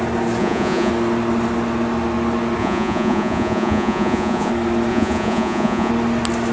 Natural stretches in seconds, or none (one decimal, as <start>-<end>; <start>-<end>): 0.0-0.4; 0.9-2.6; 4.5-4.9; 5.9-6.5